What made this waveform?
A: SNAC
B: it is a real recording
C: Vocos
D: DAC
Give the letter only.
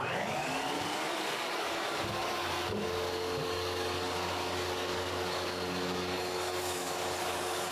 D